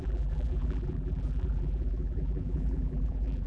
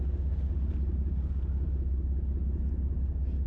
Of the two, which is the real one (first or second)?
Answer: second